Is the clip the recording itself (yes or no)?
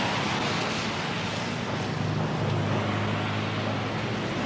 yes